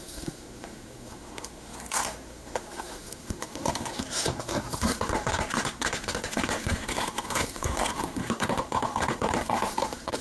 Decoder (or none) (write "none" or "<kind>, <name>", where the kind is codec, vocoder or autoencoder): codec, SNAC